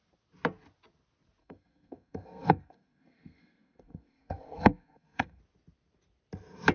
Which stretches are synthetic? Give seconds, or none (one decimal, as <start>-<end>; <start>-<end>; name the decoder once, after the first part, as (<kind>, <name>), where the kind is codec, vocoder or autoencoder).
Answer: 1.4-5.4 (codec, SNAC)